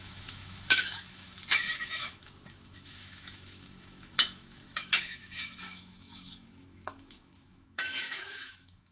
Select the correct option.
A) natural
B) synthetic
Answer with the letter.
B